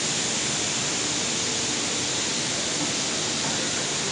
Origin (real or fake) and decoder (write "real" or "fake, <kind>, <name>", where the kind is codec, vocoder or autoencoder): real